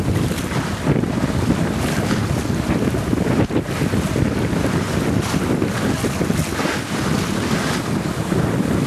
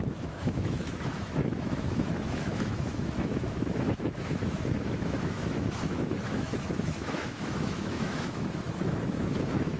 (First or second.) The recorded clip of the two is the first